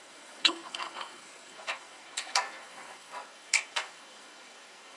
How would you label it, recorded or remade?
remade